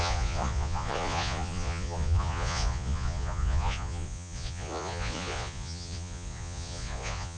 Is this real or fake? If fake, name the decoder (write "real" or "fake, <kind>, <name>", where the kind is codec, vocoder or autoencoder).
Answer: fake, vocoder, Vocos